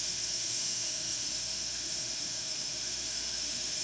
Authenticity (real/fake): fake